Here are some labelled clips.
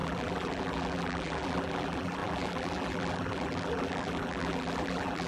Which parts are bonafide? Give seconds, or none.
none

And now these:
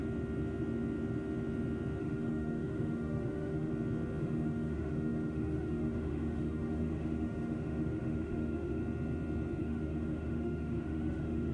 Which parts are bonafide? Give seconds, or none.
0.0-2.0; 3.7-4.2; 8.8-9.6